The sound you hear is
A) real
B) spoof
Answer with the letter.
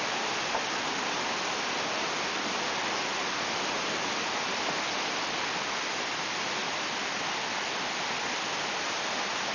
A